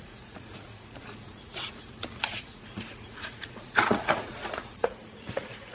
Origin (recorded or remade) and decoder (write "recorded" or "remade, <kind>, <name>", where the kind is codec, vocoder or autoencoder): remade, vocoder, Vocos